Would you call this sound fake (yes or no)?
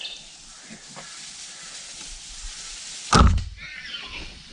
no